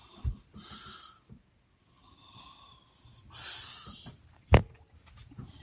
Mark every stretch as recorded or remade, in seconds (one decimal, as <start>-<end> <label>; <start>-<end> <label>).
0.0-0.5 remade; 0.5-2.0 recorded; 2.0-5.6 remade